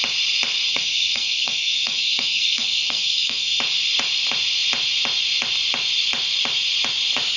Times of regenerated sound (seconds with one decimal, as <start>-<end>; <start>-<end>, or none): 0.7-3.6